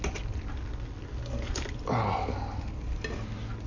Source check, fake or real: real